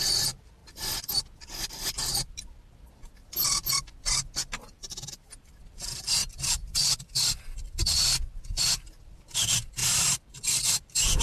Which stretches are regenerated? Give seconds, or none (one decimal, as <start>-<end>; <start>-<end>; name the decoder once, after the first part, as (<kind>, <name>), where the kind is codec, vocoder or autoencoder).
0.0-0.6 (vocoder, BigVGAN v2); 1.7-6.2; 9.0-9.8; 10.3-11.2